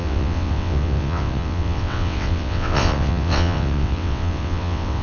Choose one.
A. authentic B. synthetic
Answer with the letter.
B